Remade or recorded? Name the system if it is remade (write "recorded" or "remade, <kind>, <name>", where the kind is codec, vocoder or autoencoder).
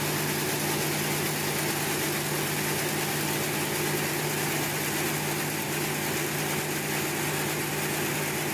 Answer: recorded